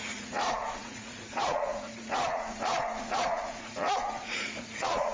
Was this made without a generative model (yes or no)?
no